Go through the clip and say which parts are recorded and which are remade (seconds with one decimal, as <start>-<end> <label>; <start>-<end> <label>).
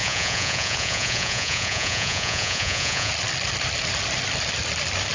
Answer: 0.0-3.1 remade; 3.1-5.1 recorded